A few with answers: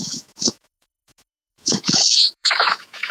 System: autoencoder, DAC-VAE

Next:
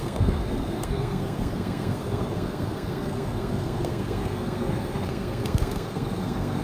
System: codec, SNAC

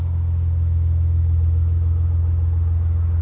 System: none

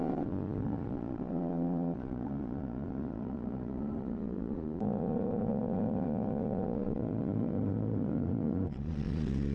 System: vocoder, Vocos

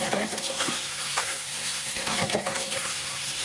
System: codec, SNAC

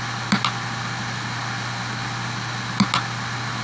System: none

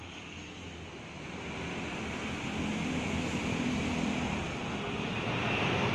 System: none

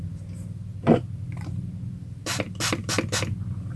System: none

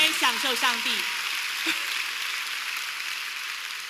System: none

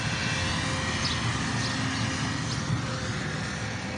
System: none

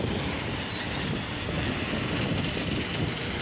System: none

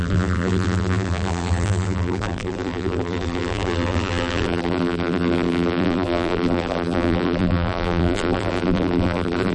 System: vocoder, BigVGAN v2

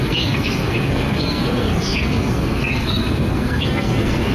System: codec, SNAC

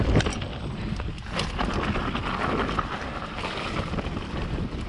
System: none